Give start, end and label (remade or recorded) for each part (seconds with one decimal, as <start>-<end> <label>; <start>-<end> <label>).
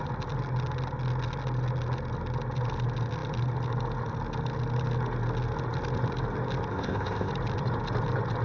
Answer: 0.0-6.7 recorded; 6.7-7.3 remade; 7.3-8.4 recorded